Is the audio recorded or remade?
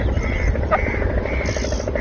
recorded